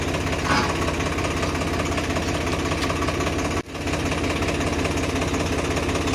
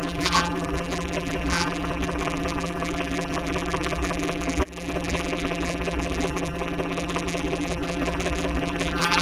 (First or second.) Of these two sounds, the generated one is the second